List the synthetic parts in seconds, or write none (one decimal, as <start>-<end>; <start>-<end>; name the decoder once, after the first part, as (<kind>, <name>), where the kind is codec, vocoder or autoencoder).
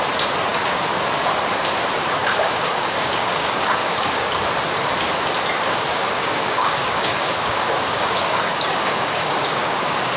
2.2-4.3 (codec, DAC); 5.9-10.2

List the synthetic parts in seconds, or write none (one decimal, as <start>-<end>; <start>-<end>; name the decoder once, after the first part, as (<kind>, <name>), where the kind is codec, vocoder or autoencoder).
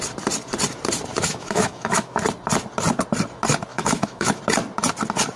1.1-2.2 (autoencoder, DAC-VAE); 3.7-4.4